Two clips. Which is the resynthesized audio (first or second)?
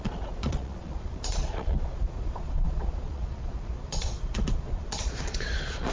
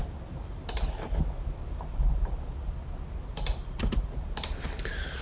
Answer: first